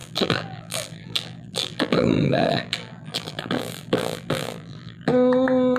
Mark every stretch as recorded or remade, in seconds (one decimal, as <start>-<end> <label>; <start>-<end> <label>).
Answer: 0.0-5.1 remade; 5.1-5.8 recorded